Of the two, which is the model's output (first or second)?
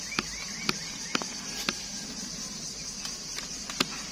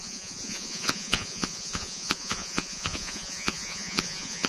second